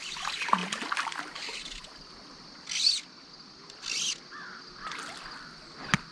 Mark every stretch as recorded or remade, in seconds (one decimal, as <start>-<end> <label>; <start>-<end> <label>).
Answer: 0.0-6.1 recorded